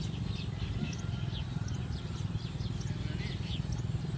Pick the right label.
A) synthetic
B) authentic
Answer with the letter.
B